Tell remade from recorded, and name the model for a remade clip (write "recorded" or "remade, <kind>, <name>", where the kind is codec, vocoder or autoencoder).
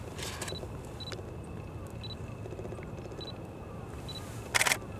recorded